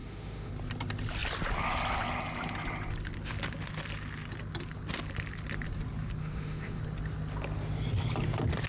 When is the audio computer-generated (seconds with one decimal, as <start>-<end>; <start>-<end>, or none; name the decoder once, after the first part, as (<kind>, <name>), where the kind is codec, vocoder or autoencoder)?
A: 0.0-0.5 (autoencoder, DAC-VAE); 6.2-6.8